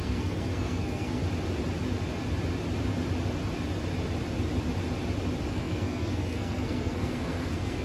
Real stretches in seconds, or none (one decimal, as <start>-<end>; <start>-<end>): 1.2-5.5